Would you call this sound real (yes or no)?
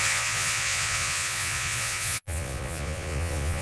no